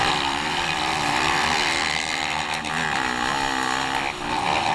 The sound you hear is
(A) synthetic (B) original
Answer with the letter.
B